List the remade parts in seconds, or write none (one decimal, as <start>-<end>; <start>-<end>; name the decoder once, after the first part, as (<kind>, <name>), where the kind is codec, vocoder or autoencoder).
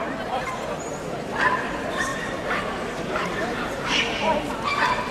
2.1-3.7 (vocoder, BigVGAN v2)